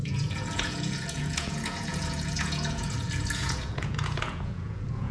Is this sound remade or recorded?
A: remade